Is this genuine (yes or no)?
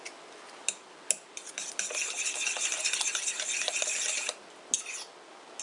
yes